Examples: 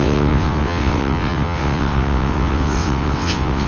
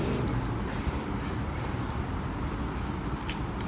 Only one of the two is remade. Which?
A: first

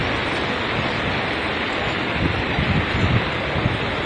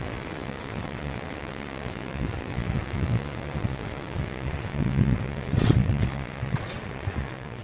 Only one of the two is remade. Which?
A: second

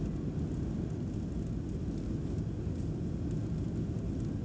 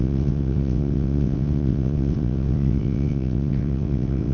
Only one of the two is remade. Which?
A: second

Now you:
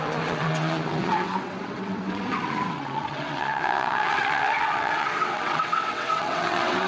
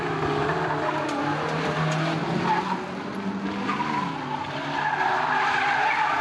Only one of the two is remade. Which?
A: first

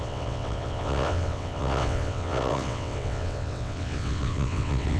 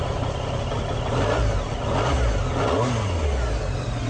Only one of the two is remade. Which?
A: first